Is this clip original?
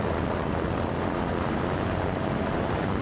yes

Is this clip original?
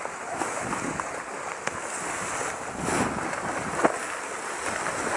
yes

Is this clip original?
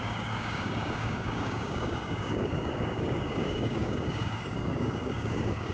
no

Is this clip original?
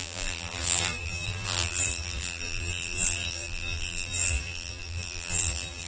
no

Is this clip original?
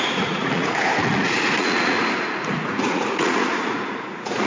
no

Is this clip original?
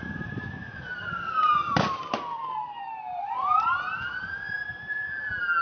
no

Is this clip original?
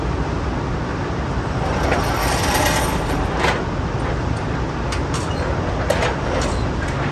yes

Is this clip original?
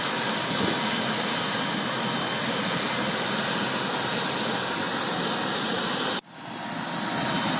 yes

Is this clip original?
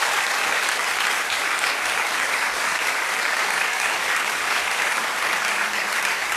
no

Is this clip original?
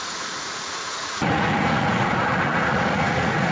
no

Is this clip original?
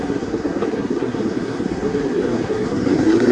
no